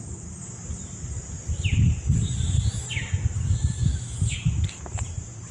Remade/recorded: recorded